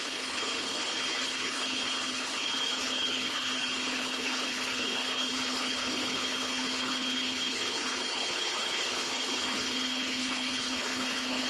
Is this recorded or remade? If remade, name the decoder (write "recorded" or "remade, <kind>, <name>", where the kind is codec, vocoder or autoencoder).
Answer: remade, codec, HILCodec